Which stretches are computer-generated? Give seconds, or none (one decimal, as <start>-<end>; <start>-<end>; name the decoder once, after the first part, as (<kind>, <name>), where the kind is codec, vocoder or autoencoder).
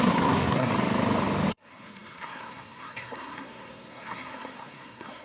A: 0.0-0.7 (codec, SNAC); 1.5-5.2